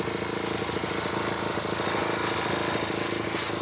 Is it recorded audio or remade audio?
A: recorded